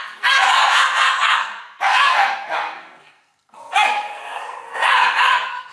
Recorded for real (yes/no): no